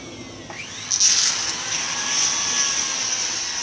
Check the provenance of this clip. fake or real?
real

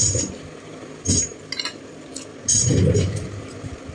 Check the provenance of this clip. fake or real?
real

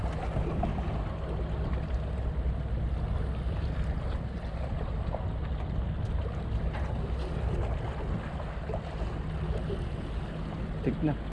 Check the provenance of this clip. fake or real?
real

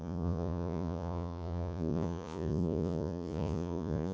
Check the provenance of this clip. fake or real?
fake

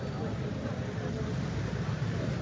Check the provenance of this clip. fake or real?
real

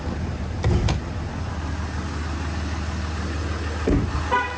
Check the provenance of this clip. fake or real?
real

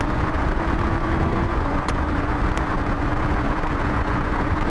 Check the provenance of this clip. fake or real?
fake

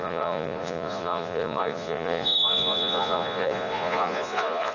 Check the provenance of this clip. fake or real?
fake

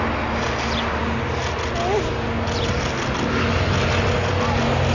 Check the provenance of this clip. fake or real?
real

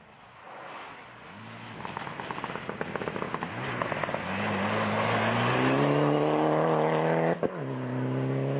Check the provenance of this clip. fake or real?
real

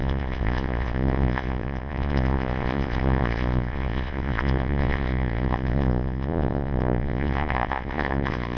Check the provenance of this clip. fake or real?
fake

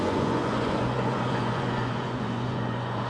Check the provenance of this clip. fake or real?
fake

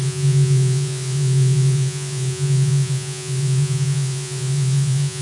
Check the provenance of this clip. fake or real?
fake